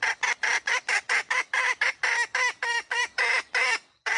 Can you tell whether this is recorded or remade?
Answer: remade